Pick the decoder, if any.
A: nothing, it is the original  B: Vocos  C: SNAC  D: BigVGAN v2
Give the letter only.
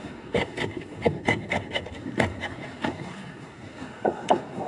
C